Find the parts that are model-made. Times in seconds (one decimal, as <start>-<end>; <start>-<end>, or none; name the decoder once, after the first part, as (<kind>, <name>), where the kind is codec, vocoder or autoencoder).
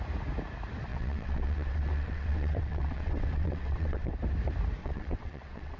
0.9-4.1 (vocoder, WaveNeXt); 4.8-5.8